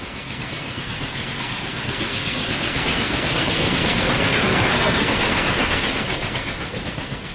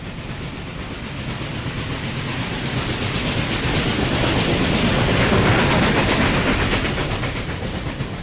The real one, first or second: second